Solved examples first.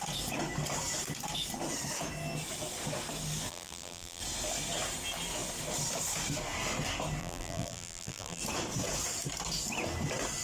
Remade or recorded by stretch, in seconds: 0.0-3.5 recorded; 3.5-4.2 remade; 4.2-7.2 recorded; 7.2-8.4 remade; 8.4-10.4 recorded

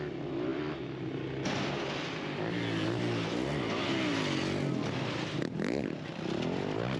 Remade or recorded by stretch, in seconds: 0.0-7.0 recorded

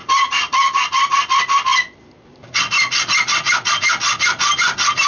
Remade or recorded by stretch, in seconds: 0.0-5.1 recorded